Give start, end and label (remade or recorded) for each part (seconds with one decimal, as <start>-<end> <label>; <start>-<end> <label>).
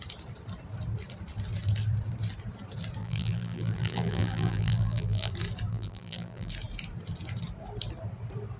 0.0-3.0 recorded; 3.0-5.3 remade; 5.3-5.7 recorded; 5.7-6.5 remade; 6.5-8.6 recorded